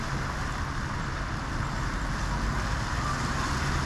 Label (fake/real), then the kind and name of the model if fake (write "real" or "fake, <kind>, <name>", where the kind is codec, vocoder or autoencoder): real